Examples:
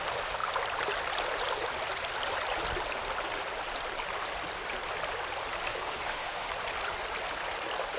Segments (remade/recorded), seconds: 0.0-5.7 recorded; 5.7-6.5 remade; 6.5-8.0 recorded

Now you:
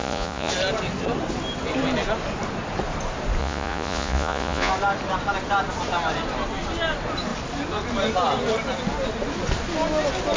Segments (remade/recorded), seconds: 0.0-0.5 remade; 0.5-3.4 recorded; 3.4-4.7 remade; 4.7-10.4 recorded

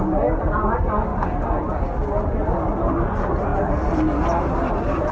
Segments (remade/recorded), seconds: 0.0-5.1 recorded

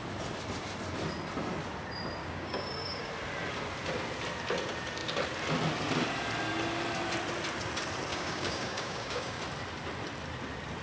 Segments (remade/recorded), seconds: 0.0-2.2 recorded; 2.2-3.1 remade; 3.1-8.1 recorded; 8.1-9.4 remade; 9.4-10.8 recorded

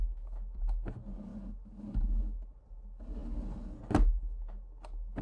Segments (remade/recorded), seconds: 0.0-5.2 recorded

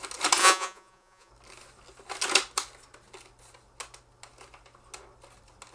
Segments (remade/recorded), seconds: 0.0-0.4 recorded; 0.4-1.3 remade; 1.3-5.7 recorded

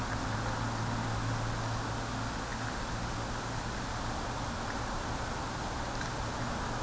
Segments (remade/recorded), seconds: 0.0-6.8 recorded